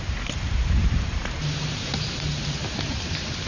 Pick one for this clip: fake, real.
fake